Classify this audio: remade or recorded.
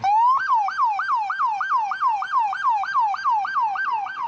recorded